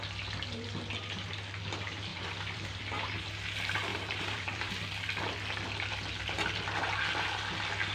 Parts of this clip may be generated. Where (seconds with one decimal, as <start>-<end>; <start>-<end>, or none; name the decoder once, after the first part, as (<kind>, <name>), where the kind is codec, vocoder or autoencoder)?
2.1-2.8 (vocoder, BigVGAN v2); 3.9-4.7